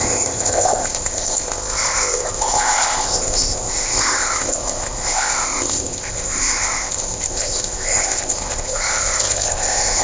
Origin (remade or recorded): remade